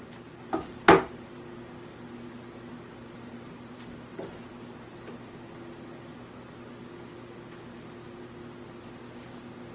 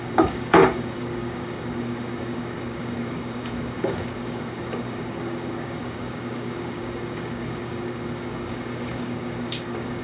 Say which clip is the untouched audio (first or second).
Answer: first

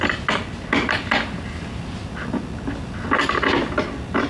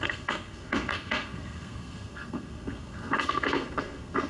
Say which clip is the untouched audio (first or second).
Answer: first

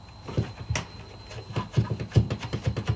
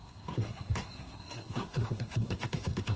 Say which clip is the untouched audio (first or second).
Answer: first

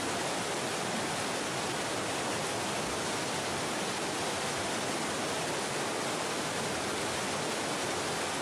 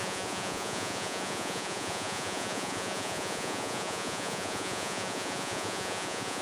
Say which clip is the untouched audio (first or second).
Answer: first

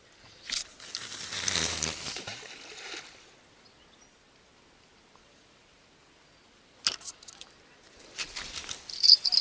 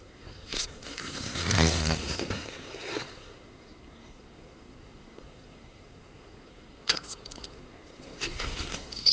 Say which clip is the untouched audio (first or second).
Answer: first